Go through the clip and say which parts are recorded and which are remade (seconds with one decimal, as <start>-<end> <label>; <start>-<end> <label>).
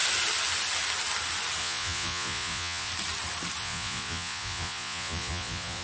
0.0-1.6 recorded; 1.6-2.9 remade; 2.9-3.6 recorded; 3.6-5.8 remade